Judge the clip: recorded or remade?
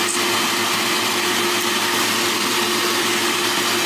recorded